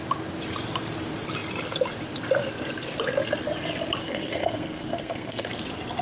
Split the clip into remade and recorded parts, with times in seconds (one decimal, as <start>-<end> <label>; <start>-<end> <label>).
0.0-4.0 recorded; 4.0-5.5 remade; 5.5-6.0 recorded